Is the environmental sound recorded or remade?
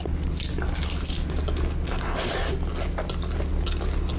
recorded